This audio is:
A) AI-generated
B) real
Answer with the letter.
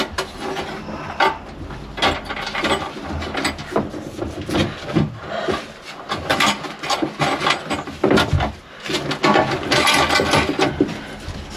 B